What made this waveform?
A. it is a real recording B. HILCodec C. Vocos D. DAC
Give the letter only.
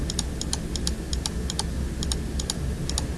A